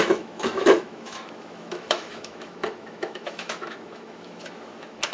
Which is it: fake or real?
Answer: fake